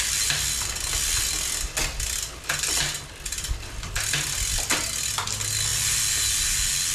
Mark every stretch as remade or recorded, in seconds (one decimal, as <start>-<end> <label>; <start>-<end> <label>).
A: 0.0-6.9 recorded